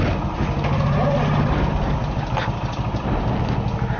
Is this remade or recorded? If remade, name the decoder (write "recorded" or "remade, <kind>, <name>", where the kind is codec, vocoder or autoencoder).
recorded